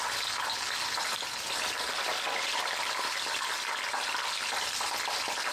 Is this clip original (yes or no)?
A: yes